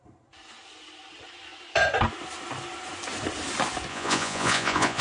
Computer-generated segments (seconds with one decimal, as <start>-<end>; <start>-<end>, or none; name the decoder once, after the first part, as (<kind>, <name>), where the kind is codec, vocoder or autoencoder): 3.9-5.0 (vocoder, Vocos)